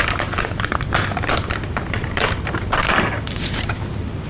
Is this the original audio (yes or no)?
no